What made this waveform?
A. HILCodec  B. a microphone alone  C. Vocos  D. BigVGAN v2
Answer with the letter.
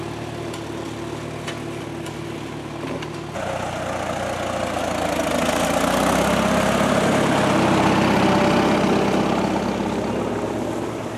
B